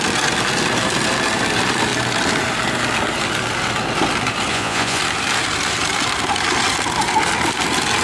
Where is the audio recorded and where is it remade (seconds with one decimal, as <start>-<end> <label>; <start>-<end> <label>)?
0.0-4.5 recorded; 4.5-5.0 remade; 5.0-8.0 recorded